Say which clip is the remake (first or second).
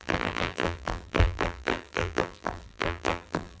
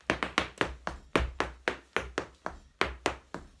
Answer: first